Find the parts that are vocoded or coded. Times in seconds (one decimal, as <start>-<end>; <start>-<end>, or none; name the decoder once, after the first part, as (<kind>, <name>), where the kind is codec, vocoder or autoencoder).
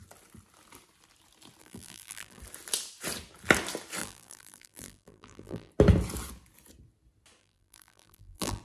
1.6-2.4 (vocoder, BigVGAN v2); 4.0-5.7; 7.4-8.6